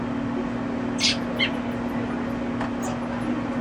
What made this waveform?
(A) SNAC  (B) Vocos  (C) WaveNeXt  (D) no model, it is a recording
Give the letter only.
D